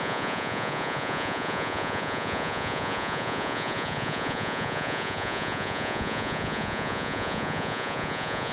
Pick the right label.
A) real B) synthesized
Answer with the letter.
B